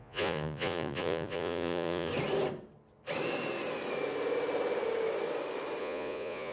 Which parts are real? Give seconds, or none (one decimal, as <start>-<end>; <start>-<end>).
2.1-5.8